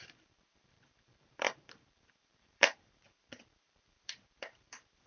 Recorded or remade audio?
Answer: remade